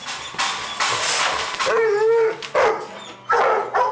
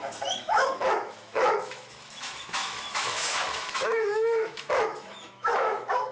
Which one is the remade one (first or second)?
second